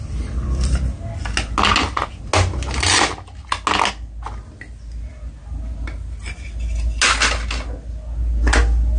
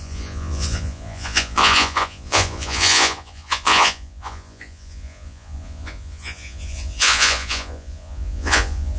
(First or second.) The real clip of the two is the first